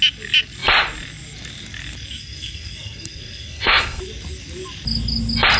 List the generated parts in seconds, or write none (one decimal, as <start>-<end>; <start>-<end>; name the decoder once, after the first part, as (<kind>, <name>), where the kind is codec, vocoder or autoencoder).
2.2-4.0 (codec, SNAC)